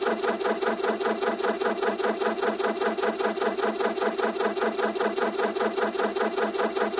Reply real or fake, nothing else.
real